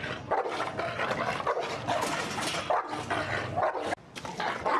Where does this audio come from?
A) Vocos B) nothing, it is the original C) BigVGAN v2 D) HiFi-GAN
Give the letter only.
B